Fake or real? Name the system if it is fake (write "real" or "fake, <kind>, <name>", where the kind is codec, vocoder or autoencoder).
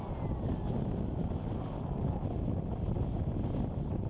real